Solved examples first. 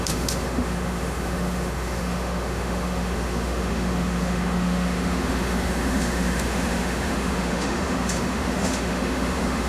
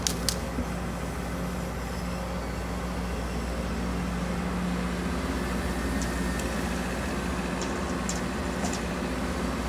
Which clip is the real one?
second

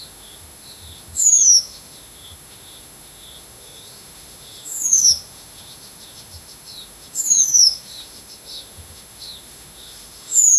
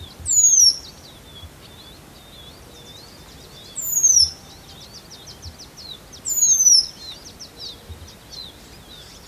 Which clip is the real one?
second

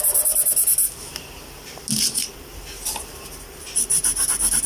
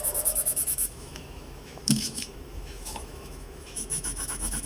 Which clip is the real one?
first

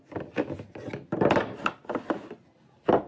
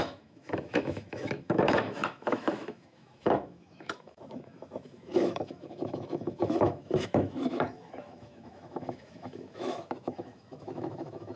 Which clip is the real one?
first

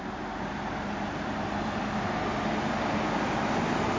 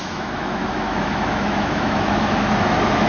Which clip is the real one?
first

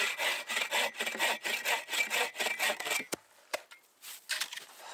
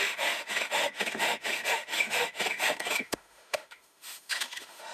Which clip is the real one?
first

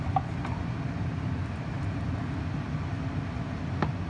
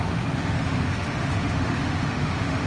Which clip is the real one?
first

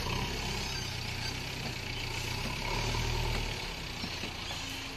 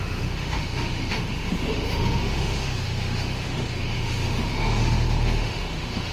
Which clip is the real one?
first